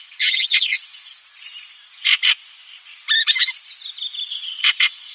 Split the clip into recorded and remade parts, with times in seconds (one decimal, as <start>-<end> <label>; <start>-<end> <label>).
0.0-1.2 remade; 1.2-4.3 recorded; 4.3-5.1 remade